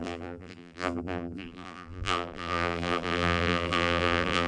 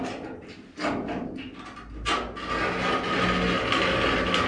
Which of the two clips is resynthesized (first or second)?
first